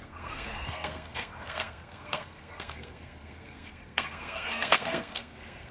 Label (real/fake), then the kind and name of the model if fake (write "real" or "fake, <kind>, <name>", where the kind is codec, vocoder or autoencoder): fake, codec, SNAC